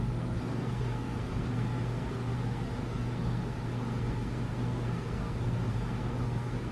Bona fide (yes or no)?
no